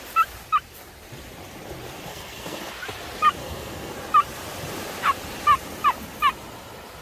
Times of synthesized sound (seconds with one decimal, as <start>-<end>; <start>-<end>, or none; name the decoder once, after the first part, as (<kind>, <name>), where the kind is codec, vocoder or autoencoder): 2.1-2.7 (codec, SNAC); 3.4-3.9